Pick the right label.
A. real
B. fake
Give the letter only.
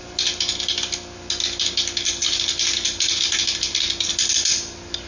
A